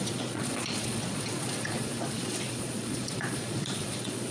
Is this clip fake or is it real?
fake